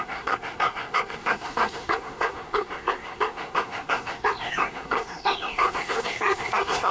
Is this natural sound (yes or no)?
no